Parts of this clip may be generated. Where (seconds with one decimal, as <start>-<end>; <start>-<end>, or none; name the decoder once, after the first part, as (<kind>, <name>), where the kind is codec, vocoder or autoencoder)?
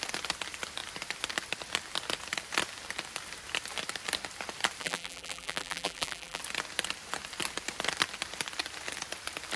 4.8-6.4 (vocoder, BigVGAN v2)